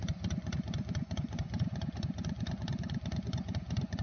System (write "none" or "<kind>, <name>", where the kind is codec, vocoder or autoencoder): vocoder, Vocos